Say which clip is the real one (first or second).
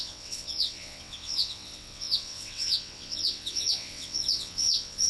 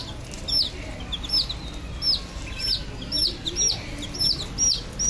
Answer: second